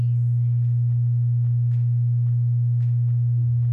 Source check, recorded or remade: recorded